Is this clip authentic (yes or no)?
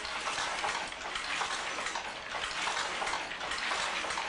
yes